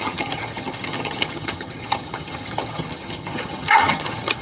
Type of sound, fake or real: fake